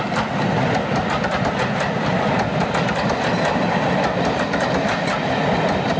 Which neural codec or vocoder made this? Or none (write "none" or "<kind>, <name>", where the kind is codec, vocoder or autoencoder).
none